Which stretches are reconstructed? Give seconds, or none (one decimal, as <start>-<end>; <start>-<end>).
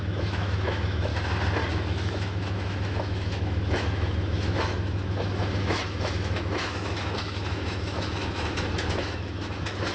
0.0-1.1; 1.7-9.9